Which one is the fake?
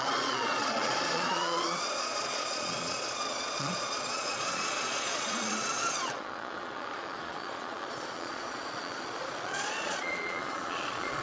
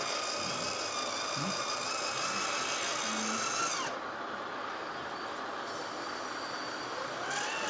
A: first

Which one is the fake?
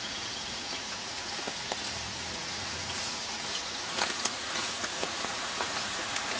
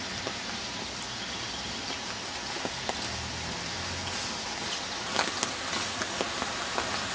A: first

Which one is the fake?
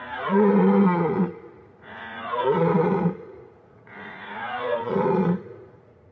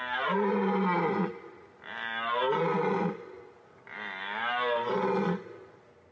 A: first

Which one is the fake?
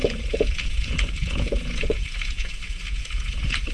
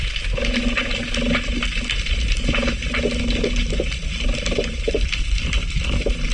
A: first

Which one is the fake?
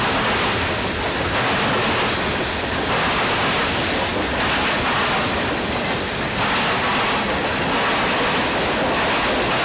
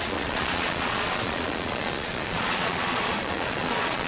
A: second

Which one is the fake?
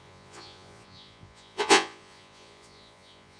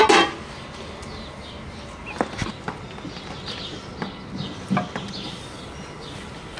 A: first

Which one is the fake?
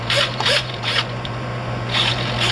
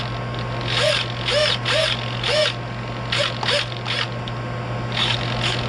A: first